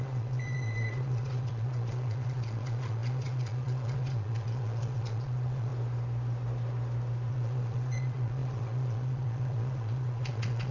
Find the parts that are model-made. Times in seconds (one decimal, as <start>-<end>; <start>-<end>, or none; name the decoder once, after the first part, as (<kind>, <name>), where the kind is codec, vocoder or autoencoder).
0.0-5.7 (vocoder, Vocos); 7.3-10.7